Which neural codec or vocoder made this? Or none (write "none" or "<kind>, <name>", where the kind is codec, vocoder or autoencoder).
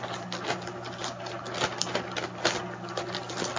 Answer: none